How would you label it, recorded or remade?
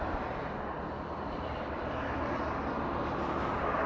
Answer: remade